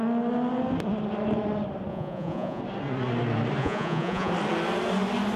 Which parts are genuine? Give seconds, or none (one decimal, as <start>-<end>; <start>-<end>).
0.0-1.9; 2.6-3.6; 4.3-5.4